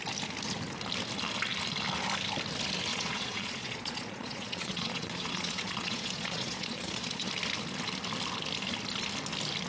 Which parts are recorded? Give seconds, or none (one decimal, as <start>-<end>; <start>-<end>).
0.0-2.9; 7.3-9.7